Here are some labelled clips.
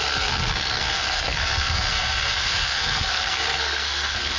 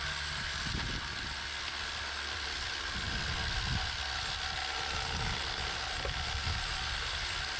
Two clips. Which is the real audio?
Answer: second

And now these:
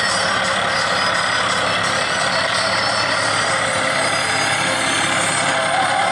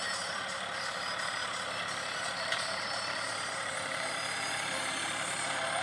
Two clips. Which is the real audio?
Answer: first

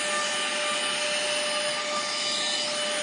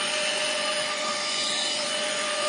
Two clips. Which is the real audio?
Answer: first